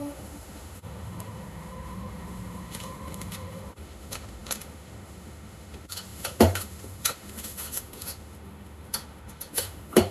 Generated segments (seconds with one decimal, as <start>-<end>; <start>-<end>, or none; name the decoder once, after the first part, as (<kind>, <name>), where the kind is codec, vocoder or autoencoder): 0.0-10.1 (autoencoder, DAC-VAE)